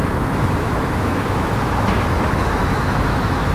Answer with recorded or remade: remade